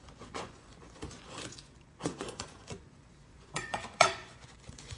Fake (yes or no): yes